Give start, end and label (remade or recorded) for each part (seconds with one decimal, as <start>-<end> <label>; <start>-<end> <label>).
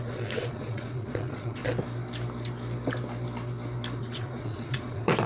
0.0-1.6 remade; 1.6-4.0 recorded; 4.0-5.3 remade